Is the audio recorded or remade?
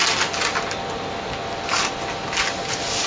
recorded